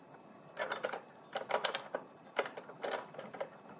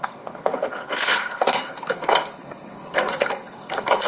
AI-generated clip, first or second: second